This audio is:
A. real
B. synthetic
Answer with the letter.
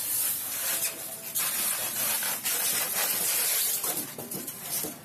A